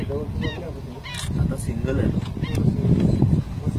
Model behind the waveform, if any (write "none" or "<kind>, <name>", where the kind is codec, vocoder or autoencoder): none